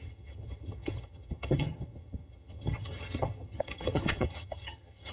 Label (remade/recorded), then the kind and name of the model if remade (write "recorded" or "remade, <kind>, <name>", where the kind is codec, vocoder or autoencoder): remade, vocoder, HiFi-GAN